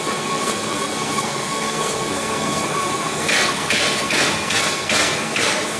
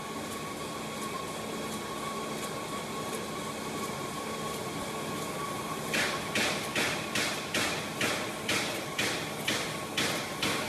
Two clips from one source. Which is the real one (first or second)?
second